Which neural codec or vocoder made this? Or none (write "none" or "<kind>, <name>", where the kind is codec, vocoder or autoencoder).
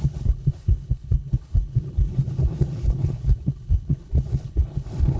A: codec, HILCodec